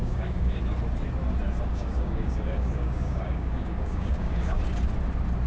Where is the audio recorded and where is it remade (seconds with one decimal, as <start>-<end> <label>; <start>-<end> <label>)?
0.0-0.6 remade; 0.6-1.7 recorded; 1.7-4.6 remade; 4.6-5.5 recorded